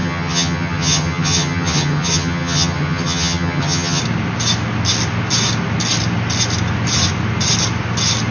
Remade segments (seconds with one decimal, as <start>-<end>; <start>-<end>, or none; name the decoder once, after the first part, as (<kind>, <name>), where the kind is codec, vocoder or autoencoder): 0.0-4.0 (vocoder, HiFi-GAN)

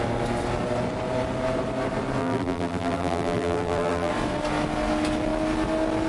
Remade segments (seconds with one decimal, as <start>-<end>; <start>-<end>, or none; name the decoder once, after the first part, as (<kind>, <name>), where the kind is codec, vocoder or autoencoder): 2.2-4.1 (vocoder, BigVGAN v2)

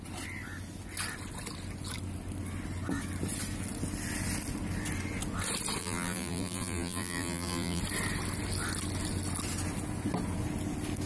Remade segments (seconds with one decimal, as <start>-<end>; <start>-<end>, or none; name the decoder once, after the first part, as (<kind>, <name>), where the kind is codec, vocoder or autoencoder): 5.8-7.8 (vocoder, BigVGAN v2)

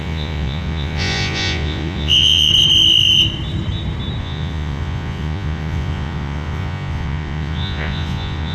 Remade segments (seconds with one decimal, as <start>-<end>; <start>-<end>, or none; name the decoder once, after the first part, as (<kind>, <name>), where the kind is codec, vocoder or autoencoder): 0.0-2.5 (vocoder, Vocos); 4.2-8.5

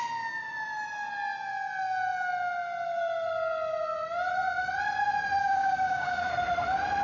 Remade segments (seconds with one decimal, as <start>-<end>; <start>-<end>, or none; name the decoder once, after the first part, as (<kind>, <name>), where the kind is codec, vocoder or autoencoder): 5.4-6.3 (codec, DAC)

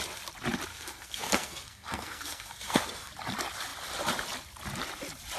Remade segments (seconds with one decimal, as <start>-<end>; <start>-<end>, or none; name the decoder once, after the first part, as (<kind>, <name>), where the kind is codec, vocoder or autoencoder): 0.7-3.1 (codec, SNAC)

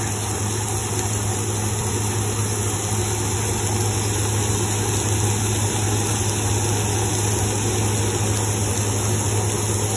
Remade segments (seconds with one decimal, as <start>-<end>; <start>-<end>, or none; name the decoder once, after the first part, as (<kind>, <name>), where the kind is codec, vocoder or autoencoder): none

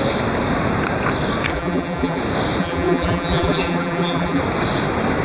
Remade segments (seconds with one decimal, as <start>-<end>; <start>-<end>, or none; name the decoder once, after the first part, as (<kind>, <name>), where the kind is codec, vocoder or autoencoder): 1.5-2.2 (vocoder, BigVGAN v2); 2.6-4.4